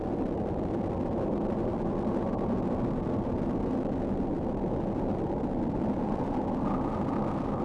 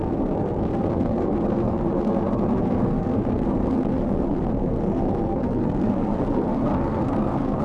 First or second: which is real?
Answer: first